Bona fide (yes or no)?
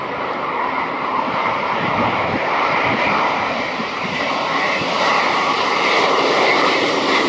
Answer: no